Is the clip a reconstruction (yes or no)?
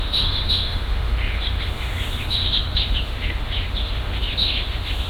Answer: yes